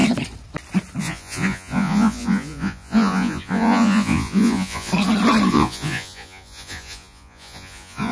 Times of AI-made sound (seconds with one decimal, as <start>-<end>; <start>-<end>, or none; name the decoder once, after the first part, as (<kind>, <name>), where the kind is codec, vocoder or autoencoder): 1.0-4.9 (vocoder, Vocos); 5.5-8.1